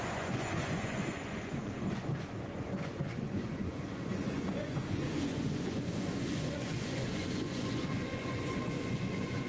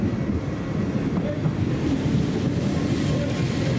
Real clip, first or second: second